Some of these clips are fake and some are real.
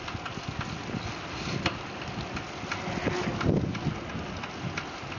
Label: real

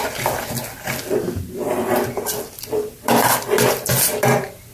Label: real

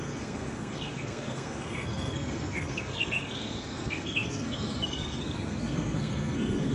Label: fake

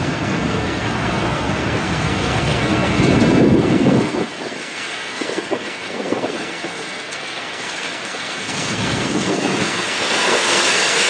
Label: fake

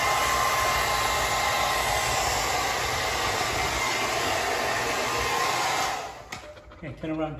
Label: real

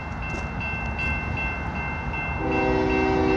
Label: real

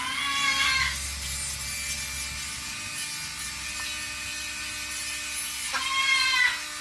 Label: real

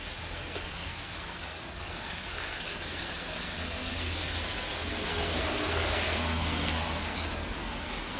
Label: fake